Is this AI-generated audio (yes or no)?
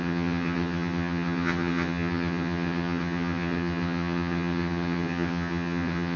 yes